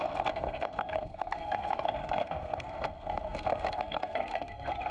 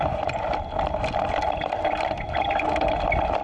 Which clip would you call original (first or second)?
second